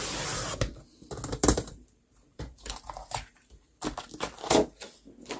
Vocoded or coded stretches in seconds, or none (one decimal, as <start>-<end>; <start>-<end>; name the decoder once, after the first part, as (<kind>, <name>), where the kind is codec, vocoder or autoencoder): 1.3-3.8 (vocoder, BigVGAN v2)